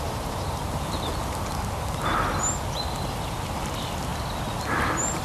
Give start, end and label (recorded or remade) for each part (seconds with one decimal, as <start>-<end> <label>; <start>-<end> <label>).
0.0-5.2 recorded